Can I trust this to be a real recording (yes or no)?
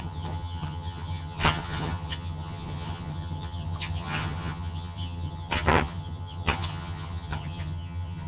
no